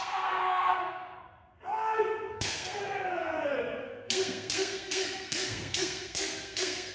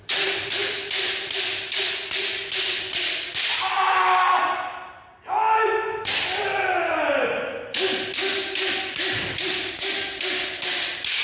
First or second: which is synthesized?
first